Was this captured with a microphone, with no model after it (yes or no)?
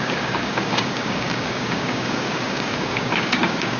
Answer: no